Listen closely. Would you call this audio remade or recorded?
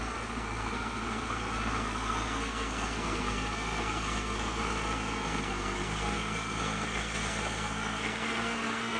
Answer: remade